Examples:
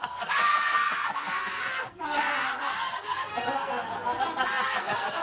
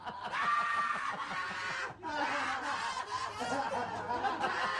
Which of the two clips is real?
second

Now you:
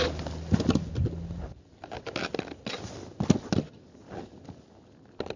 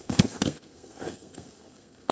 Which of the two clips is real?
first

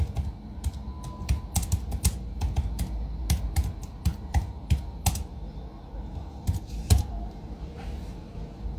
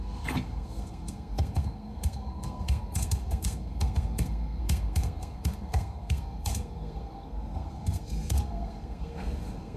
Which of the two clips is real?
first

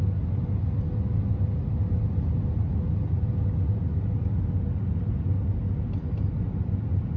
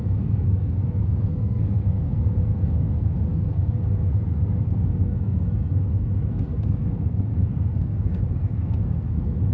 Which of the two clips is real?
first